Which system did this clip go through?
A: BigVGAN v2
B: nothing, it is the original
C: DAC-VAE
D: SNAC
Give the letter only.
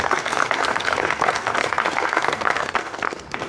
D